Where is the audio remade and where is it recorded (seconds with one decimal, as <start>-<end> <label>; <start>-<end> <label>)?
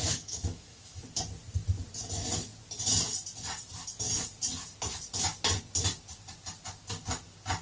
0.0-1.0 remade; 1.0-7.6 recorded